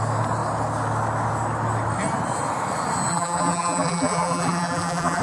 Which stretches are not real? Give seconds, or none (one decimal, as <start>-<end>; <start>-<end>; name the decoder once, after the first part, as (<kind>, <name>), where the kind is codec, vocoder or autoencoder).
3.1-5.2 (vocoder, BigVGAN v2)